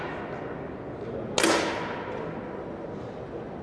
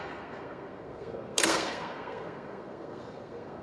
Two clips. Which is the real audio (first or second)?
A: first